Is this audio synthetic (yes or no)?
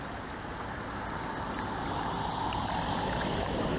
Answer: no